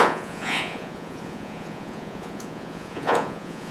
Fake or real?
fake